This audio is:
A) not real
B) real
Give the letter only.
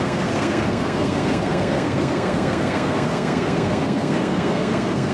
A